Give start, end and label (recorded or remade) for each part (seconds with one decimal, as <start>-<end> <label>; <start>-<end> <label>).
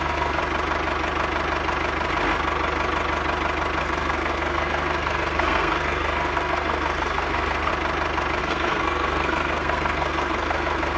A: 0.0-0.4 remade; 0.4-3.8 recorded; 3.8-7.7 remade; 7.7-8.4 recorded; 8.4-11.0 remade